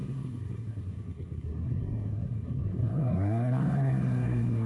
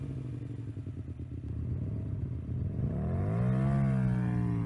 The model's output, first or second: first